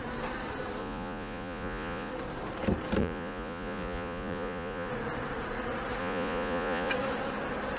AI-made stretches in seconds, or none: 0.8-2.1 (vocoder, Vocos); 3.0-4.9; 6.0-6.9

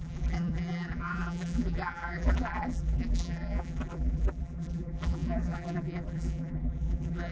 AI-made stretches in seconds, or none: 0.0-7.3 (vocoder, BigVGAN v2)

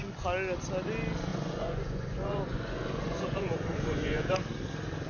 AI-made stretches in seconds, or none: 1.3-4.4 (vocoder, Vocos)

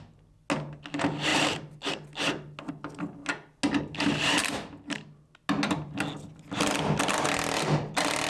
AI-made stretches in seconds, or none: none

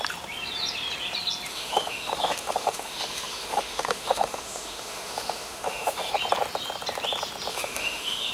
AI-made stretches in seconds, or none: 1.5-6.1 (autoencoder, DAC-VAE); 7.5-8.3

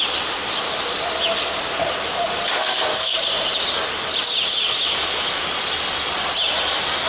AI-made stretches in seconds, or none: 2.5-3.2 (codec, SNAC)

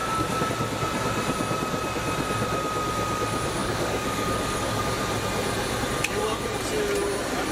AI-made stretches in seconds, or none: 0.0-0.5 (codec, DAC); 3.6-4.8

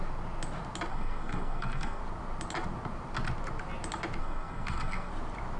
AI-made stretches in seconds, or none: 0.9-2.0 (codec, SNAC); 4.2-5.1